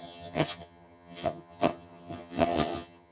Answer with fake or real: fake